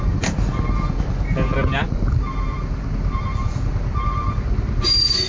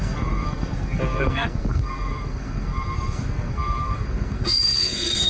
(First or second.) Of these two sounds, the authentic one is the first